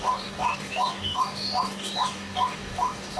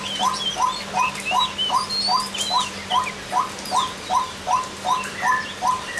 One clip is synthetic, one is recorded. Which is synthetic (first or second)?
first